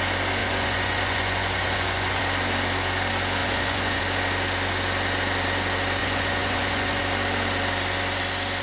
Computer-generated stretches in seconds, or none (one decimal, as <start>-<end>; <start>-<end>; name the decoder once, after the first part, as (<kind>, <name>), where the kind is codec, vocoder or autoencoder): 0.4-2.2 (vocoder, Vocos); 3.4-4.0; 6.0-7.0